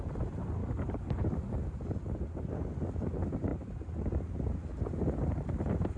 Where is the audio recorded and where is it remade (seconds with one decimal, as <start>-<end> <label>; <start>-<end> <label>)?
0.0-0.6 recorded; 0.6-1.6 remade; 1.6-6.0 recorded